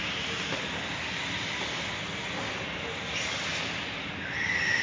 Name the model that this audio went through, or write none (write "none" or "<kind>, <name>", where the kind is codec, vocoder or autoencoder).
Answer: none